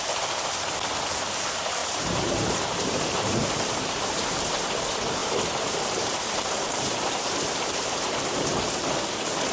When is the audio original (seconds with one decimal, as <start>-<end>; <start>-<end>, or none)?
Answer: 0.0-1.8; 4.7-5.2; 8.9-9.5